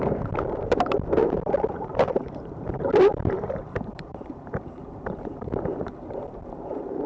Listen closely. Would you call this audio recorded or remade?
remade